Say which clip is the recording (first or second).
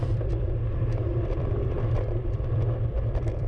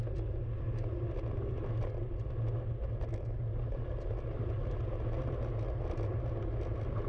second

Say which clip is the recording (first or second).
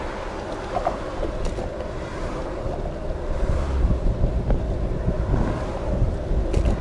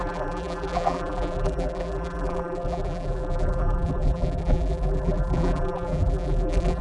first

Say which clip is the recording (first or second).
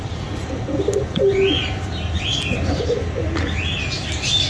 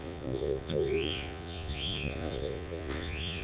first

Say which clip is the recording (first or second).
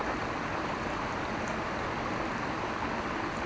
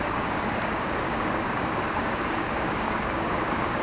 first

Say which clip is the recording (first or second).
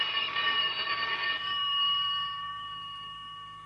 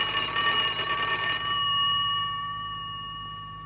second